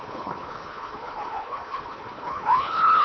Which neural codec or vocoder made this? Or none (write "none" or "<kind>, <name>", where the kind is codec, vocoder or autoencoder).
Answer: codec, HILCodec